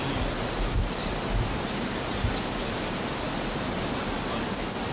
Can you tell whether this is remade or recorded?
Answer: recorded